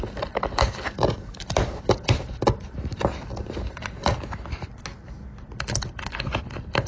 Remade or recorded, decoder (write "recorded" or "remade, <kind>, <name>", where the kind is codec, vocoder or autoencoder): recorded